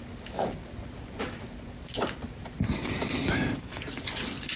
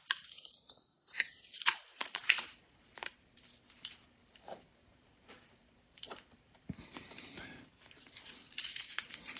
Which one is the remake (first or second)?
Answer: second